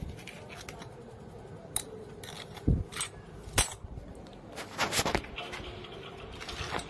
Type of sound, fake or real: real